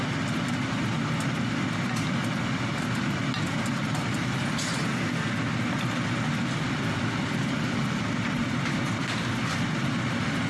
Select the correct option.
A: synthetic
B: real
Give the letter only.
B